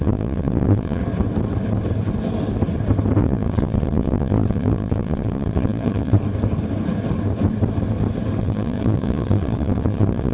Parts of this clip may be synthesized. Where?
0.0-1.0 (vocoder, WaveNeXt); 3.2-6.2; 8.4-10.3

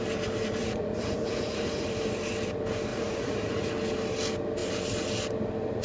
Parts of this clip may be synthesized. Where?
0.6-1.9 (vocoder, Vocos); 2.9-3.7

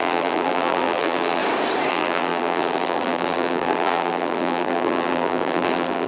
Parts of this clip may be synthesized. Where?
0.0-1.4 (vocoder, BigVGAN v2); 1.9-6.1

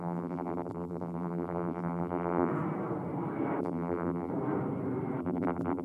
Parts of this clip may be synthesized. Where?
0.0-2.5 (vocoder, BigVGAN v2); 3.6-4.3; 5.2-5.8

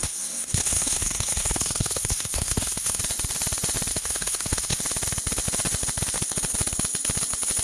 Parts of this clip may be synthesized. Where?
0.0-3.0 (codec, SNAC); 3.9-4.8

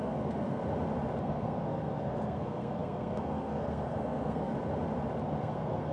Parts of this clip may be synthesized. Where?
0.0-0.6 (codec, SNAC); 1.2-4.5; 5.4-5.9

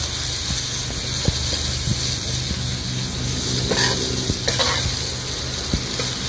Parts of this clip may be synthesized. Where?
none